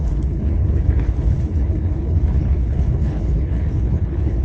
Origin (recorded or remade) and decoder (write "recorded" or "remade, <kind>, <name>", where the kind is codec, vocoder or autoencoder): remade, codec, HILCodec